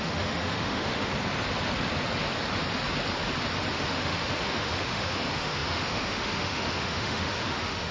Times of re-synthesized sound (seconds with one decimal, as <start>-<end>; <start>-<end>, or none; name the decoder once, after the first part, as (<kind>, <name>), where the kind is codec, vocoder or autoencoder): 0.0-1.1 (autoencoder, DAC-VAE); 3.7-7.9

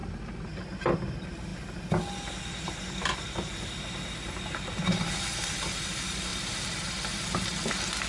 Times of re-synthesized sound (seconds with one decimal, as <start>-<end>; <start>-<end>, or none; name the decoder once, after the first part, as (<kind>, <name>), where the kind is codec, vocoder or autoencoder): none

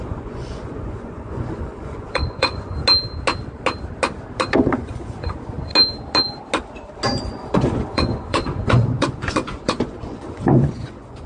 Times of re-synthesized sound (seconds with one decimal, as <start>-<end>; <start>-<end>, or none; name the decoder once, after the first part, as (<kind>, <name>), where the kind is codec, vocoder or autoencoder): 0.0-2.8 (vocoder, Vocos); 4.7-5.7; 7.2-11.3